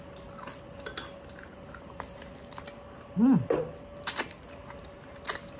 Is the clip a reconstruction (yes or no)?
no